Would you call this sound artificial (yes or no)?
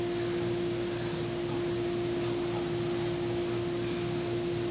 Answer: no